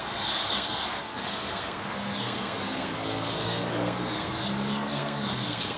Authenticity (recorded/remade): remade